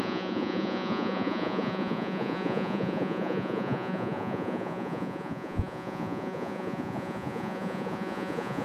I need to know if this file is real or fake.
fake